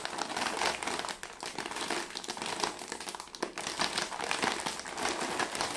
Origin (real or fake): real